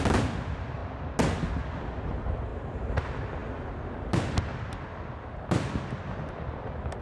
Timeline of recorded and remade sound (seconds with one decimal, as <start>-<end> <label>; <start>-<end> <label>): 0.0-2.5 recorded; 2.5-3.0 remade; 3.0-7.0 recorded